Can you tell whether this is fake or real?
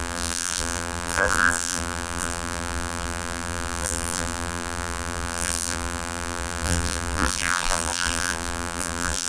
fake